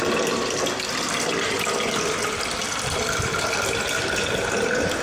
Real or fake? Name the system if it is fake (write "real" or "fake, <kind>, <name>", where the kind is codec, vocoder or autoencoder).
fake, vocoder, BigVGAN v2